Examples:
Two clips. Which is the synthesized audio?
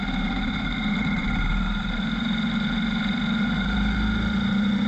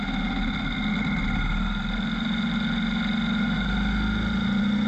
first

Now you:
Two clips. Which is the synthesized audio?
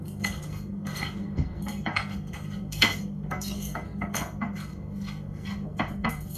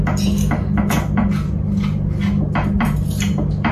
first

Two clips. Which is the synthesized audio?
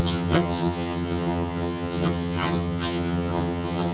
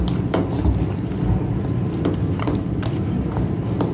first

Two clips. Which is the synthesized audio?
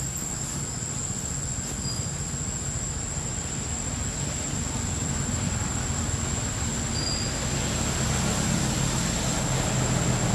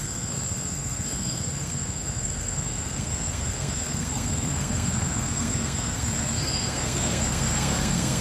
second